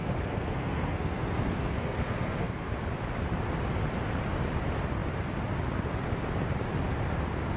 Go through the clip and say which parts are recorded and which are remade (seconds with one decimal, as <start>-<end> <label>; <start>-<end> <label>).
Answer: 0.0-2.7 remade; 2.7-7.6 recorded